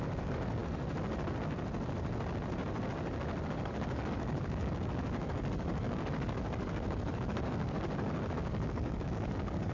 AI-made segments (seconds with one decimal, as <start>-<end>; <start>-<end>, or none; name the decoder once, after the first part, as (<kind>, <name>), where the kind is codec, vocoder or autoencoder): 0.0-0.6 (codec, DAC); 3.5-9.7